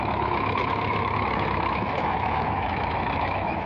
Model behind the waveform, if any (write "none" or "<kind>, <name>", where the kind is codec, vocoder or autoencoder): autoencoder, DAC-VAE